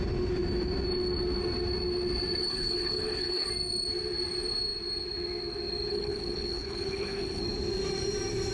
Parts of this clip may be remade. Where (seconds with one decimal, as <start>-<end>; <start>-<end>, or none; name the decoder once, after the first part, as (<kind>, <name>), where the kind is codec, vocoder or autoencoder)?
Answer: 2.4-3.5 (codec, HILCodec); 5.9-7.4